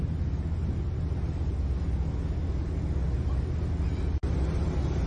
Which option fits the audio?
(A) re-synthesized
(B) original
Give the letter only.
B